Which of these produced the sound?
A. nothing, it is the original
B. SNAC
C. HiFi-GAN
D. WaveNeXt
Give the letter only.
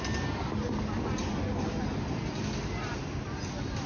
A